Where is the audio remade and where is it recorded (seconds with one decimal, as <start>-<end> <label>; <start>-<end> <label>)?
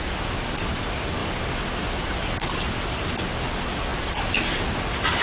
0.0-5.2 recorded